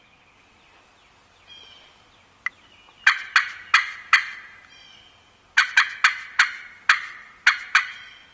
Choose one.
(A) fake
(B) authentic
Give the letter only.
B